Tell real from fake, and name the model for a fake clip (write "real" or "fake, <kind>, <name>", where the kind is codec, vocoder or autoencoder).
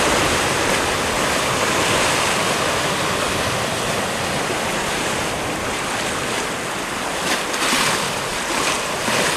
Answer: real